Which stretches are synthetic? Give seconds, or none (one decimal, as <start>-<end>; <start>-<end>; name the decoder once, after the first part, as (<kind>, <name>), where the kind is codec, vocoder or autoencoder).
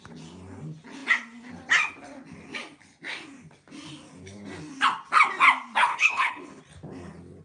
5.9-6.6 (codec, HILCodec)